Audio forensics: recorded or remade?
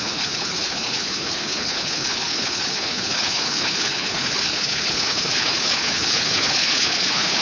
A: remade